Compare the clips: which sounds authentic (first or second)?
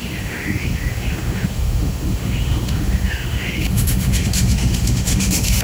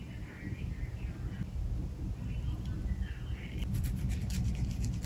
second